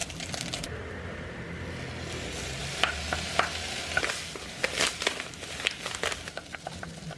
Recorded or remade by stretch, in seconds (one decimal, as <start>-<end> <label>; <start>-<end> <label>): 0.0-7.2 recorded